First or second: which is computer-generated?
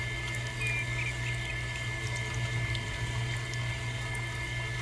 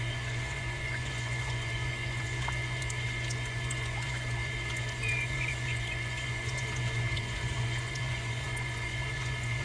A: second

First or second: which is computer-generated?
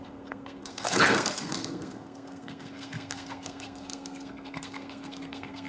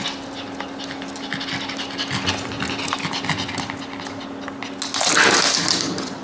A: first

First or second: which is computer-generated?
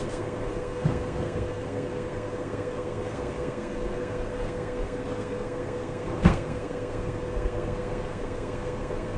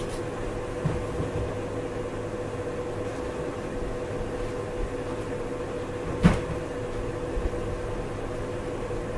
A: first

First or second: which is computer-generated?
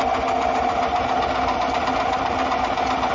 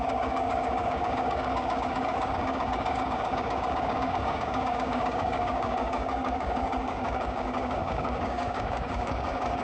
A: second